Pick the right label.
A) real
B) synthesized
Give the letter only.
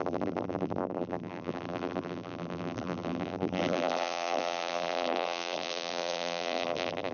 B